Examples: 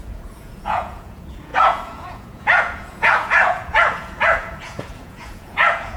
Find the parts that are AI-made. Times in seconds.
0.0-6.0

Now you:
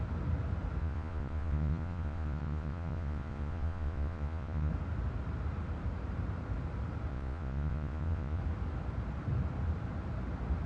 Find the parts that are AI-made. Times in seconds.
0.8-4.7; 7.1-8.4

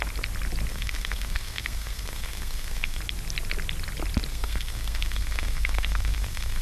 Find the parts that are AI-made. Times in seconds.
0.7-3.0; 4.3-6.6

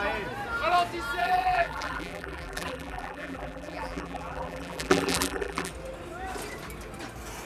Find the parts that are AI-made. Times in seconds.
1.2-5.7

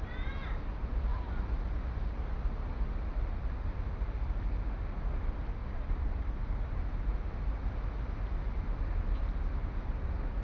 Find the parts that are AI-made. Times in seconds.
5.6-7.6

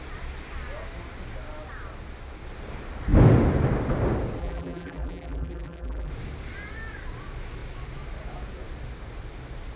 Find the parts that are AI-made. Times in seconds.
4.4-6.1